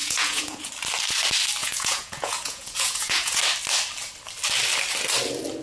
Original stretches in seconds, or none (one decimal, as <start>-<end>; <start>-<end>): 0.7-1.6; 3.4-5.6